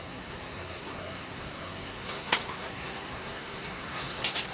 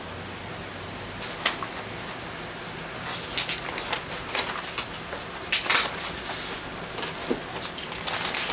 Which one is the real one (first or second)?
second